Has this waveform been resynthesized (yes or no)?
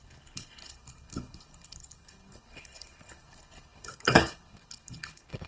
yes